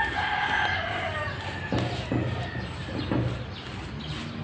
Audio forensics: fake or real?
real